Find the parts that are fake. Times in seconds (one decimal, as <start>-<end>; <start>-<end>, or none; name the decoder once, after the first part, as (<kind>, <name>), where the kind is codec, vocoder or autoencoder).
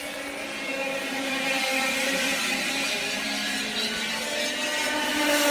0.8-4.1 (vocoder, BigVGAN v2)